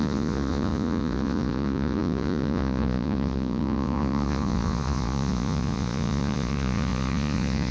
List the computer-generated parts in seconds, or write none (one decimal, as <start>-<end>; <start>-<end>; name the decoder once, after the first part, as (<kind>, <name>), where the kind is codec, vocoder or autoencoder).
0.0-7.7 (vocoder, Vocos)

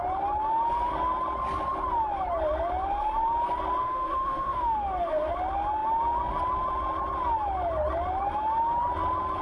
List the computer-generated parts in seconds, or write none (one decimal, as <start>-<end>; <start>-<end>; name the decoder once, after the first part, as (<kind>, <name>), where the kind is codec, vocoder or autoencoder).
3.8-5.3 (autoencoder, DAC-VAE)

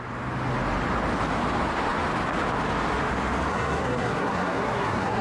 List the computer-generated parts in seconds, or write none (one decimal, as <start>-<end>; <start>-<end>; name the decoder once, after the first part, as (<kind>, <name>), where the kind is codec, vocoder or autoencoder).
3.5-5.2 (codec, SNAC)

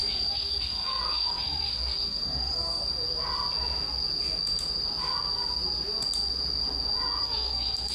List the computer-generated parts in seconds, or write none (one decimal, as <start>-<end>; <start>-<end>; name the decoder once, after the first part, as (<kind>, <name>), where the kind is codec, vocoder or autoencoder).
0.0-2.8 (codec, SNAC); 7.2-7.9